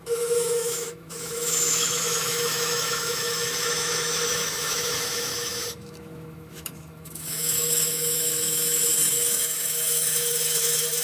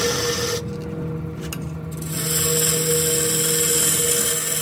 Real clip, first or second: second